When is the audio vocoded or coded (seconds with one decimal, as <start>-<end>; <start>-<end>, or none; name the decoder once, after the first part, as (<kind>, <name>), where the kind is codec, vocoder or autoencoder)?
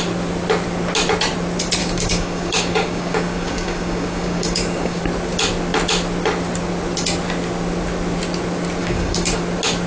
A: 1.8-5.0 (codec, DAC); 8.8-9.4